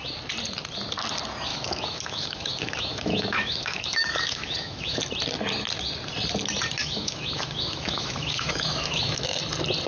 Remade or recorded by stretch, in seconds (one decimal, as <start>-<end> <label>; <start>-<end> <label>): 0.0-1.5 recorded; 1.5-5.0 remade; 5.0-6.8 recorded; 6.8-9.4 remade; 9.4-9.9 recorded

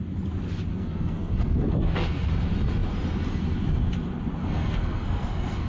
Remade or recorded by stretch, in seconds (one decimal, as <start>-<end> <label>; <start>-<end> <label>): 0.0-0.7 recorded; 0.7-2.3 remade; 2.3-4.4 recorded; 4.4-5.7 remade